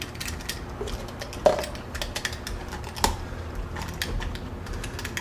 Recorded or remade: recorded